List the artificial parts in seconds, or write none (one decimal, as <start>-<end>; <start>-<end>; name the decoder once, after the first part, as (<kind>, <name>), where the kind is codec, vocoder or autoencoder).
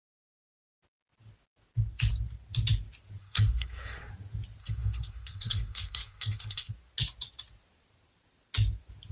3.2-4.1 (codec, SNAC); 4.6-6.7